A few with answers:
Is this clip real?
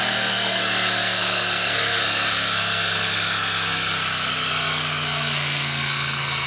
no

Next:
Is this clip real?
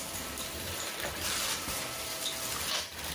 no